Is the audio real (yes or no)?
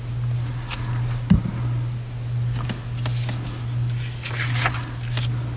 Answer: yes